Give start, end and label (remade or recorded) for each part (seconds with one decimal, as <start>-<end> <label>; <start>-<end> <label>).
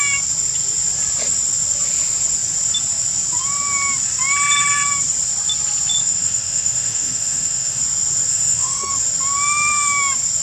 0.0-6.0 recorded; 6.0-7.8 remade; 7.8-8.3 recorded; 8.3-8.9 remade; 8.9-10.4 recorded